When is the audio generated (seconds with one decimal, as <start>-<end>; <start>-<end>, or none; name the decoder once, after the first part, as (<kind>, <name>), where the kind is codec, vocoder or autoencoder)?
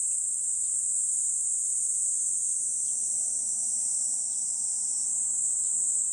3.4-5.0 (vocoder, BigVGAN v2)